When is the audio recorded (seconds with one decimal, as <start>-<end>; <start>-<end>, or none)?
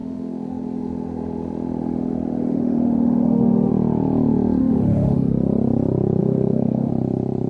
3.7-4.6; 5.3-6.2; 6.9-7.5